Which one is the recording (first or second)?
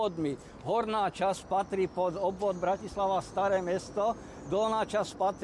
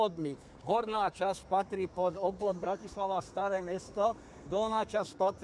first